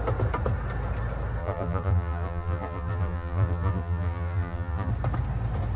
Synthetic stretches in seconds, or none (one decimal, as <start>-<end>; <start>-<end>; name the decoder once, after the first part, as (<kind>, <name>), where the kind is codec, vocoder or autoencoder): 1.4-4.9 (vocoder, BigVGAN v2)